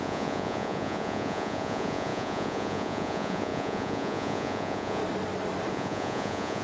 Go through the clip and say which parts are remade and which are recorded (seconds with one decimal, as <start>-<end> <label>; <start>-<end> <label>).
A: 0.0-5.0 remade; 5.0-5.7 recorded; 5.7-6.6 remade

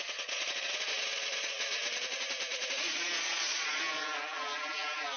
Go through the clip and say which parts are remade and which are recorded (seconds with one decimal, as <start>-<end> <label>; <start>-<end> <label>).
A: 0.0-5.2 remade

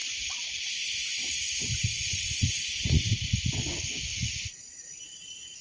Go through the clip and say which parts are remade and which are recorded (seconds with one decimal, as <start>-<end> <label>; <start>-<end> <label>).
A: 0.0-3.4 remade; 3.4-4.1 recorded; 4.1-5.6 remade